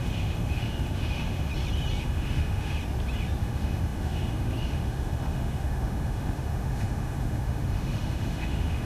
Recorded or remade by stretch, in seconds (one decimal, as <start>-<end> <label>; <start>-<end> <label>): 0.0-1.5 remade; 1.5-2.0 recorded; 2.0-2.8 remade; 2.8-3.4 recorded; 3.4-8.9 remade